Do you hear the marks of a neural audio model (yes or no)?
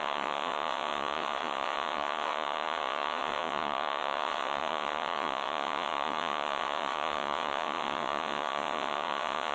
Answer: yes